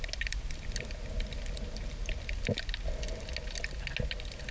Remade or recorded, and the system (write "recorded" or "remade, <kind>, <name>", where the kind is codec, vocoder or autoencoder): recorded